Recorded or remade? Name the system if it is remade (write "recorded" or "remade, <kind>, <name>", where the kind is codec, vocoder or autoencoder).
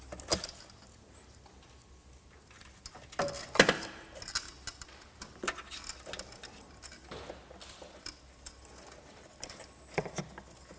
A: recorded